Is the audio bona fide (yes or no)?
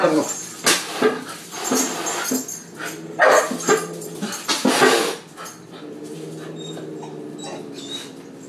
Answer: yes